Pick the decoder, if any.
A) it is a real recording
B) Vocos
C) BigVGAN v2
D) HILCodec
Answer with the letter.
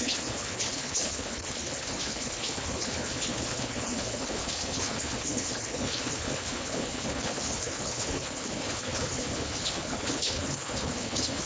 D